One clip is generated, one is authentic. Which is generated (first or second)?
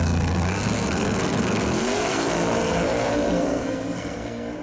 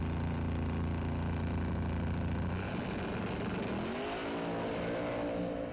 first